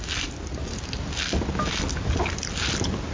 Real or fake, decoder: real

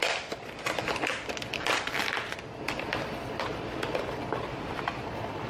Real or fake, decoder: real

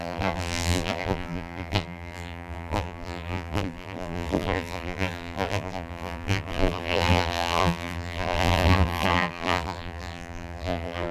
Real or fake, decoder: fake, vocoder, BigVGAN v2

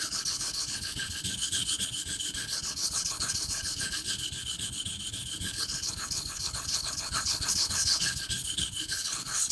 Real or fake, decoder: fake, codec, HILCodec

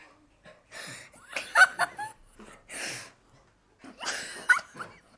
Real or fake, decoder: real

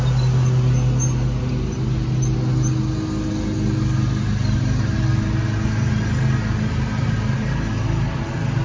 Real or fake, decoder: real